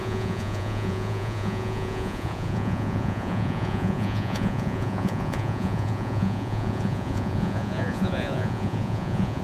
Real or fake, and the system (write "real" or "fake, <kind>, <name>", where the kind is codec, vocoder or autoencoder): fake, vocoder, Vocos